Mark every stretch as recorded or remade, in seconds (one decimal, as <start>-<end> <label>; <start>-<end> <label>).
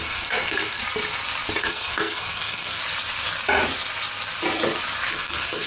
0.0-0.8 remade; 0.8-1.6 recorded; 1.6-2.8 remade; 2.8-5.1 recorded; 5.1-5.7 remade